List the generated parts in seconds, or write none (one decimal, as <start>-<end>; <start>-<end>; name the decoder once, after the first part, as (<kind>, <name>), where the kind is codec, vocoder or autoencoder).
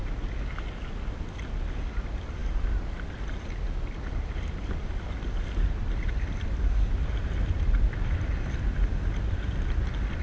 none